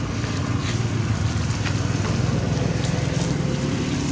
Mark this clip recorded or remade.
recorded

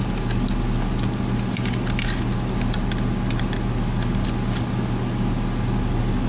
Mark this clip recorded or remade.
recorded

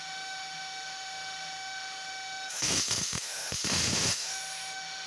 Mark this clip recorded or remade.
remade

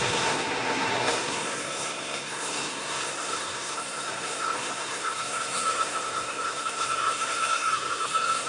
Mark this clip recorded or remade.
remade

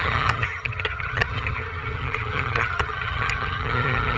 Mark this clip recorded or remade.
remade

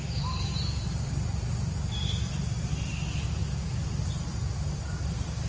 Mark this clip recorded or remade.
recorded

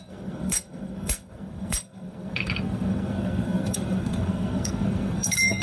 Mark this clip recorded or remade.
remade